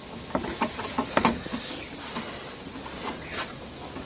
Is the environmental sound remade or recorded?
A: recorded